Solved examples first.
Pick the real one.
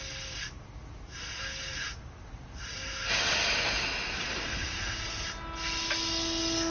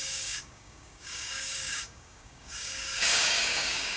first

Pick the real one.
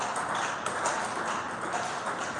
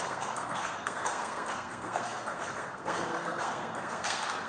first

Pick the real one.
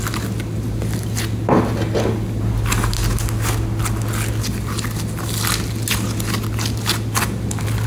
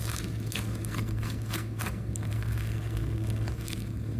first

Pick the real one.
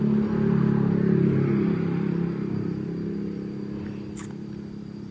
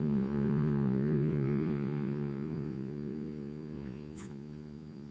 first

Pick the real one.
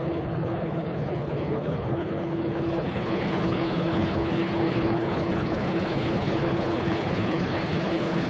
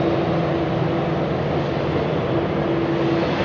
second